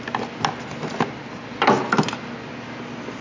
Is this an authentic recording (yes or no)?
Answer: yes